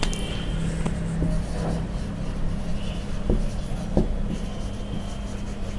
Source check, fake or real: real